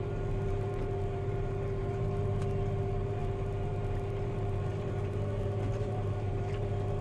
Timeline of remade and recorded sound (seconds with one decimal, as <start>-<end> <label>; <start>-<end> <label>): 0.0-7.0 remade